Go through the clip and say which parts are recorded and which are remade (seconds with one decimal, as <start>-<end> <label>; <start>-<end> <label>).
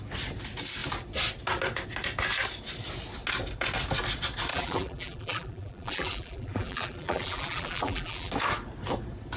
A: 0.0-4.5 recorded; 4.5-8.3 remade; 8.3-9.4 recorded